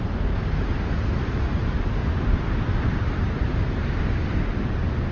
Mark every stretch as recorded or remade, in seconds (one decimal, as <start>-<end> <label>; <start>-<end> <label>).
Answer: 0.0-2.0 recorded; 2.0-5.1 remade